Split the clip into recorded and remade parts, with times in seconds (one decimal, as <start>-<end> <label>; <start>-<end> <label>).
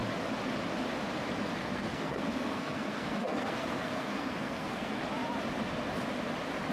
0.0-1.6 recorded; 1.6-5.0 remade; 5.0-6.7 recorded